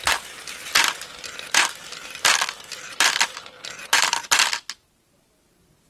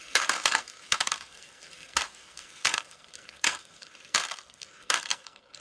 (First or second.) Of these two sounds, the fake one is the second